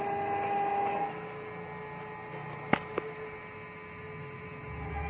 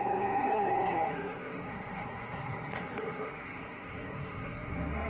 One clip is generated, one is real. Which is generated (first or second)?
second